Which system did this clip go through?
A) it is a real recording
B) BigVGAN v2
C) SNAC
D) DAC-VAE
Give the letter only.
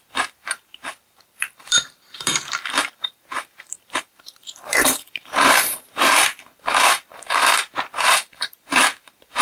B